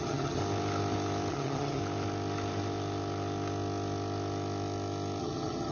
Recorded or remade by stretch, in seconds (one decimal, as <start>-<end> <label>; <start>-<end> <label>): 0.0-0.4 remade; 0.4-1.3 recorded; 1.3-1.8 remade; 1.8-5.2 recorded; 5.2-5.7 remade